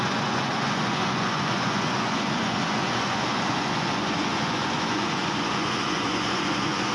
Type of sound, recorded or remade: remade